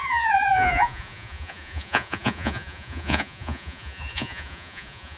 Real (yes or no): no